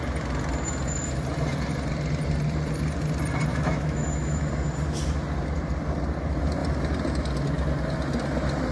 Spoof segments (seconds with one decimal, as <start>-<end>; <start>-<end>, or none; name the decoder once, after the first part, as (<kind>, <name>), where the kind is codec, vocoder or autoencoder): 3.5-4.5 (autoencoder, DAC-VAE)